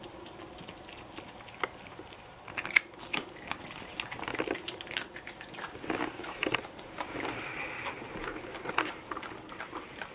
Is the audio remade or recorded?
recorded